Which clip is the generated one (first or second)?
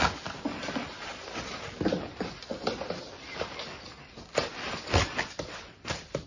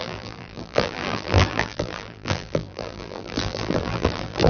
second